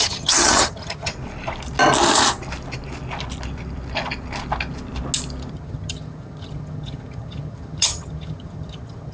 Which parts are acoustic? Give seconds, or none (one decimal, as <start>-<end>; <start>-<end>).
1.1-5.5